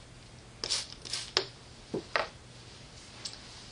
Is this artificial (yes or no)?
no